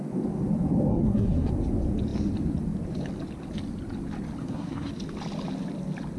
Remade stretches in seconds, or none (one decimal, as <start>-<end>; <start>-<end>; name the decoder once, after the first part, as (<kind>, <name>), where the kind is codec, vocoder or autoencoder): 0.9-1.5 (codec, SNAC); 4.4-4.9